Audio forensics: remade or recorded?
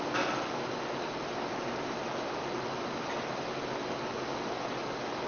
recorded